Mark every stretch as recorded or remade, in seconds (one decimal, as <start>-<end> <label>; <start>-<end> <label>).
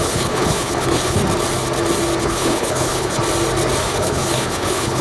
0.0-1.2 remade; 1.2-2.2 recorded; 2.2-3.2 remade; 3.2-3.8 recorded; 3.8-5.0 remade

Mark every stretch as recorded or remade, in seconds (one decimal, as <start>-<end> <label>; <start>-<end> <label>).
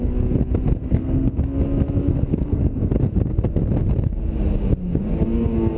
0.0-0.9 recorded; 0.9-1.4 remade; 1.4-2.1 recorded; 2.1-2.9 remade; 2.9-5.8 recorded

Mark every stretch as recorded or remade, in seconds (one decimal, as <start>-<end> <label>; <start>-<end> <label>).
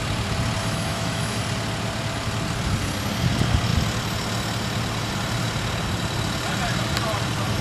0.0-0.6 recorded; 0.6-1.4 remade; 1.4-7.6 recorded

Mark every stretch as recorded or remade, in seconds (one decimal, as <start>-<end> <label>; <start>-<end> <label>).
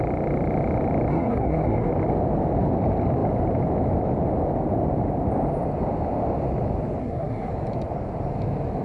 0.0-1.1 recorded; 1.1-1.9 remade; 1.9-7.0 recorded; 7.0-7.5 remade; 7.5-8.8 recorded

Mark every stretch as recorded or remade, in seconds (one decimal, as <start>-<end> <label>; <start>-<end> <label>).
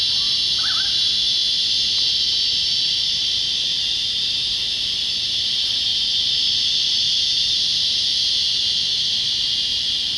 0.0-10.2 remade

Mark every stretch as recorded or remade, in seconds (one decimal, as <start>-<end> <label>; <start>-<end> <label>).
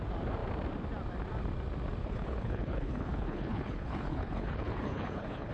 0.0-2.0 recorded; 2.0-5.5 remade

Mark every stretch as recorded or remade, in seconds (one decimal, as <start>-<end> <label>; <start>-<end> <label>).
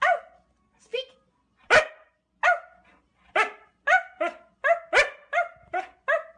0.0-6.4 recorded